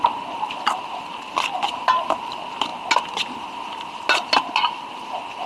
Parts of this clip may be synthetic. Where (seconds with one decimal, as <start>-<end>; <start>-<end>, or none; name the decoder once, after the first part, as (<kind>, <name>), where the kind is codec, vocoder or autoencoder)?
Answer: none